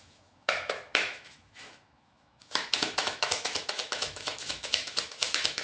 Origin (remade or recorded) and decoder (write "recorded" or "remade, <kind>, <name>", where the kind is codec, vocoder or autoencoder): remade, autoencoder, DAC-VAE